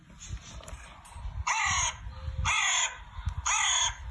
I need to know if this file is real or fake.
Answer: real